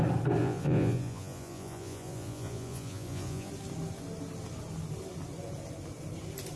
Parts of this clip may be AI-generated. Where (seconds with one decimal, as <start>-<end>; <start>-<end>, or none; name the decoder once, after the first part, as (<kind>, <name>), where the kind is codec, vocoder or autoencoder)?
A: 0.4-3.5 (vocoder, Vocos)